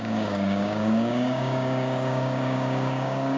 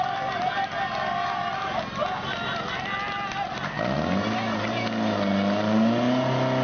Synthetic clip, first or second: first